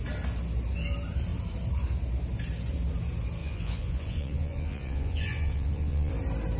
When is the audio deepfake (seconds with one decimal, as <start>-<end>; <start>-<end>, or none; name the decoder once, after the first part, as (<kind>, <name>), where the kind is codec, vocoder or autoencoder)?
3.4-6.1 (vocoder, Vocos)